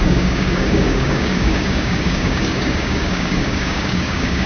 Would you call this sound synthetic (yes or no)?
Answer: yes